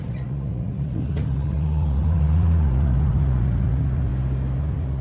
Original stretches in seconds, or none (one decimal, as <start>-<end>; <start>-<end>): 4.1-4.6